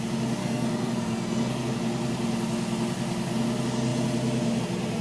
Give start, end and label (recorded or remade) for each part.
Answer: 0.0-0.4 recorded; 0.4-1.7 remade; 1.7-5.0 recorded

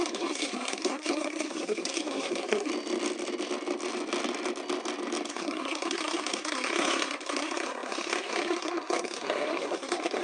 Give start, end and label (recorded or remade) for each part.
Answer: 0.0-2.7 remade; 2.7-5.3 recorded; 5.3-10.2 remade

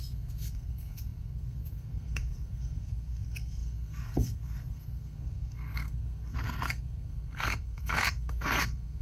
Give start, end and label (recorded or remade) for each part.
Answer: 0.0-9.0 remade